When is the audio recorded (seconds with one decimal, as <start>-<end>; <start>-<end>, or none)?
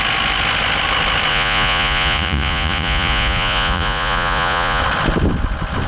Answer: 0.0-1.3; 4.8-5.9